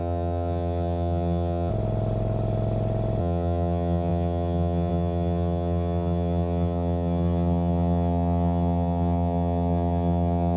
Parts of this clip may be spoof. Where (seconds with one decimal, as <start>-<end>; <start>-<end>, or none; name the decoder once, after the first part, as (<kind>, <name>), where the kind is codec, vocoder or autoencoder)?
0.0-1.7 (vocoder, HiFi-GAN); 3.2-10.6